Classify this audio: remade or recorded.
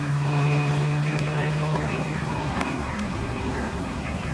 remade